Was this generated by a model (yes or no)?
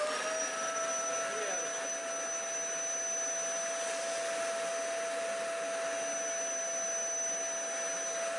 no